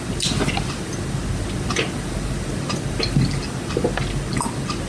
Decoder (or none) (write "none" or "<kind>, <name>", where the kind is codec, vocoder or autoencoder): none